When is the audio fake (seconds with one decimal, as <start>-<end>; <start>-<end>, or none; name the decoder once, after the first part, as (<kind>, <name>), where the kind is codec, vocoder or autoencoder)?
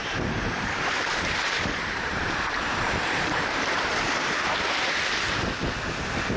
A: 0.0-3.8 (vocoder, BigVGAN v2)